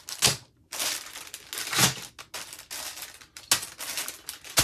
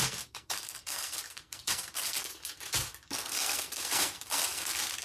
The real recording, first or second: first